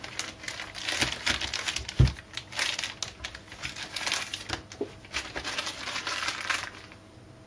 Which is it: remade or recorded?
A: recorded